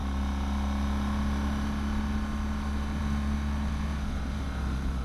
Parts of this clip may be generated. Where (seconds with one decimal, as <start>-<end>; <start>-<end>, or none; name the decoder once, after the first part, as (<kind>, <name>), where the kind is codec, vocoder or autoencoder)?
none